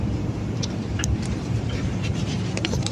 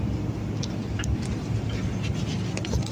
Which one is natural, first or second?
second